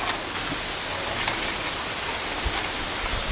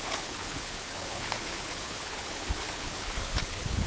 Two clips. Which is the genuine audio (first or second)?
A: first